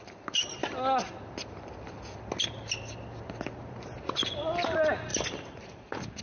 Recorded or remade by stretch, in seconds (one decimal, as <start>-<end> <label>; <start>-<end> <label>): 0.0-6.2 recorded